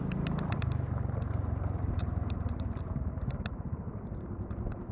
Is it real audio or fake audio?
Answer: fake